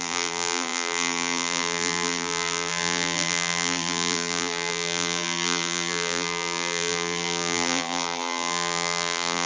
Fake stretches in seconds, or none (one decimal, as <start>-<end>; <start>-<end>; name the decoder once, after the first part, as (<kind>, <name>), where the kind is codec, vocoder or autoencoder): 0.0-9.5 (vocoder, BigVGAN v2)